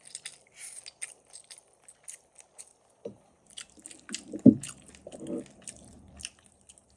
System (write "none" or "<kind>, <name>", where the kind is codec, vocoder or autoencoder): none